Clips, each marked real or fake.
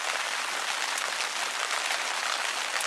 real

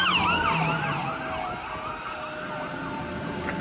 real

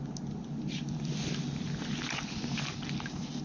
real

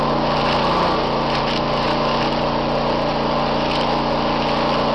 real